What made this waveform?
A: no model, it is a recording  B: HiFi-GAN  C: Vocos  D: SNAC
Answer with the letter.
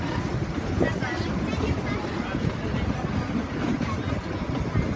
A